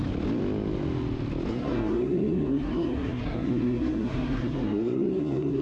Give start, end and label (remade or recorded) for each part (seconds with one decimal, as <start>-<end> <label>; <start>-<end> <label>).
0.0-1.5 recorded; 1.5-5.6 remade